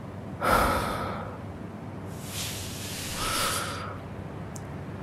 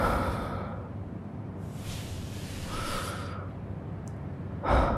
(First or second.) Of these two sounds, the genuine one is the first